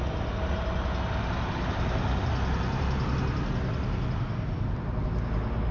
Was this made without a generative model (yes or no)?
yes